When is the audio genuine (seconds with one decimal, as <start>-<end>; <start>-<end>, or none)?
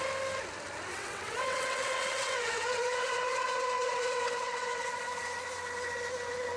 0.0-0.9; 4.9-6.6